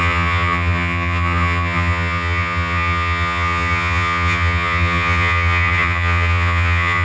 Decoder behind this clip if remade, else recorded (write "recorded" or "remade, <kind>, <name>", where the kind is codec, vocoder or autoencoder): remade, vocoder, HiFi-GAN